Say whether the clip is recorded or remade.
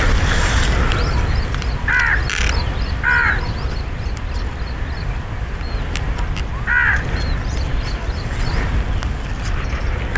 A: recorded